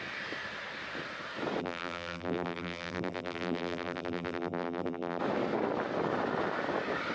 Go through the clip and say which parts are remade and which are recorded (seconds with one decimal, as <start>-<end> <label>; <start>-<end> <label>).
0.0-1.6 recorded; 1.6-5.2 remade; 5.2-7.1 recorded